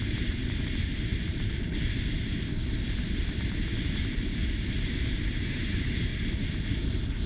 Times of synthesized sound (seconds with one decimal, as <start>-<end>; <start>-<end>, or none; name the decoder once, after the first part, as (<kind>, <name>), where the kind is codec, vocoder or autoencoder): 0.0-1.1 (vocoder, BigVGAN v2); 5.5-6.1